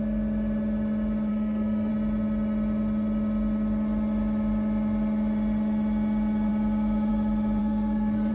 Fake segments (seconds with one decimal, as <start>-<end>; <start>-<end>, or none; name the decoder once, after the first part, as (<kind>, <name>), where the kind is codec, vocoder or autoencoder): 1.3-1.9 (codec, SNAC); 7.6-8.3